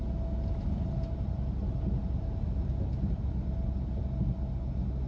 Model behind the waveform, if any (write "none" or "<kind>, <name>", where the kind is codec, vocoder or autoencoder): none